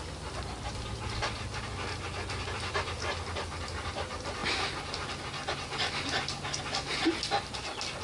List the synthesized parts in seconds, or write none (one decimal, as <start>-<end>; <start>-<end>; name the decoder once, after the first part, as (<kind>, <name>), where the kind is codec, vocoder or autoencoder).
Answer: none